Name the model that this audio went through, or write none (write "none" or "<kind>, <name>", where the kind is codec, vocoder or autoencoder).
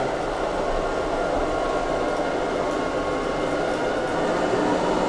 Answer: none